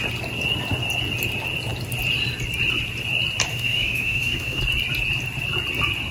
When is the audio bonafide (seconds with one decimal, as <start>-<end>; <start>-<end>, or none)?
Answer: 0.0-3.5; 4.6-6.1